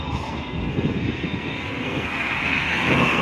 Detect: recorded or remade remade